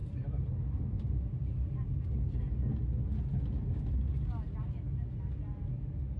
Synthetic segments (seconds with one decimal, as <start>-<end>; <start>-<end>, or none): none

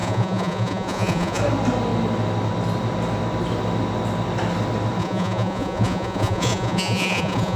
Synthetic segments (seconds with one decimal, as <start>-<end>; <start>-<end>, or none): 0.0-1.4; 5.0-7.6

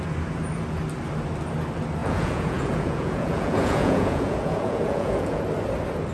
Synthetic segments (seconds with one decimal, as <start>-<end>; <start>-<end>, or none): 2.0-5.4